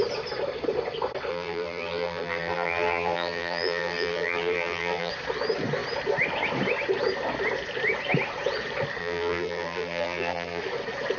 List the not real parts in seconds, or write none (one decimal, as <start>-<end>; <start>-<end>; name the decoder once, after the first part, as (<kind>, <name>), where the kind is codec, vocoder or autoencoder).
1.3-5.1 (vocoder, BigVGAN v2); 9.0-10.6